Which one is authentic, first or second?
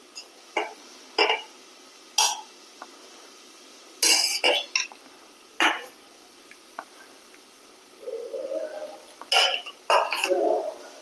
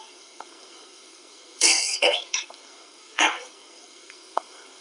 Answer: first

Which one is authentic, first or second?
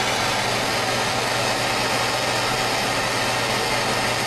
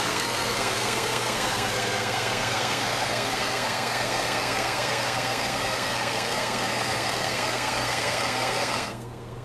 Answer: first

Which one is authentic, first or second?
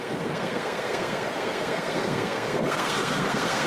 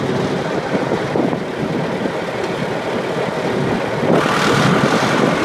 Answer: second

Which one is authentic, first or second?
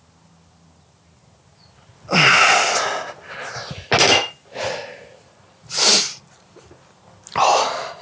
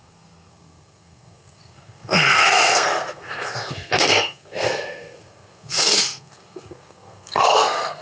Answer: first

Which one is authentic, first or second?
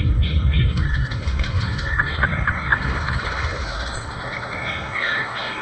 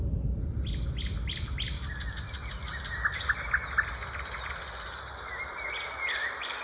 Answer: second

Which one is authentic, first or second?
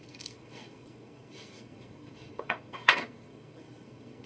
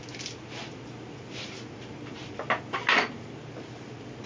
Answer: second